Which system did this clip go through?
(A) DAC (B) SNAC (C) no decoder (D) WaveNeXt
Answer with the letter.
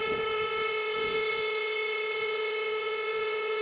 D